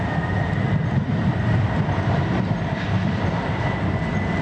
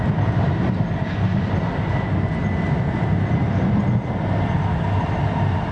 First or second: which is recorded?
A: second